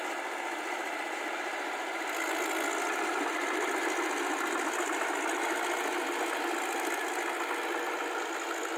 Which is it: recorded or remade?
recorded